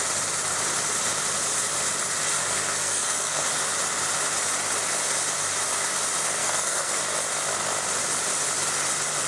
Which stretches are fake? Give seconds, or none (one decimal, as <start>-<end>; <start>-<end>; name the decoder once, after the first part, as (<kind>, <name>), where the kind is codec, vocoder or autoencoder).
2.4-3.4 (codec, SNAC); 6.4-7.0